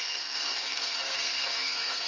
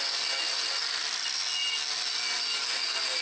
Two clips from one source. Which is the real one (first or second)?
second